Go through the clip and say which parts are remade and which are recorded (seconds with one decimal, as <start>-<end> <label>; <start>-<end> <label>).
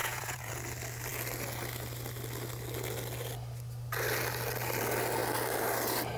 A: 0.0-0.5 remade; 0.5-6.2 recorded